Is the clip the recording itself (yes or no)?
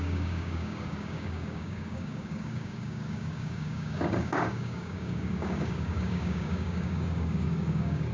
no